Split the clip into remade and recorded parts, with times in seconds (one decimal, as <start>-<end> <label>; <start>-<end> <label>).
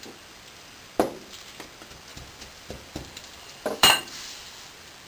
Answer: 0.0-2.1 recorded; 2.1-5.1 remade